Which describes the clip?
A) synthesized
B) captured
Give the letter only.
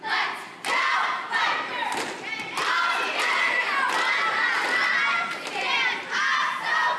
B